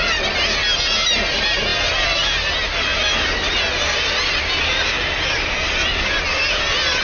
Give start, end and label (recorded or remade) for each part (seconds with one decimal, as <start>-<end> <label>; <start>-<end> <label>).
0.0-7.0 recorded